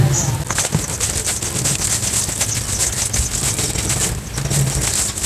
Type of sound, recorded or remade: recorded